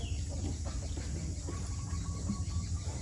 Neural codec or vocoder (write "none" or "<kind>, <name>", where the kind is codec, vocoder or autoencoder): none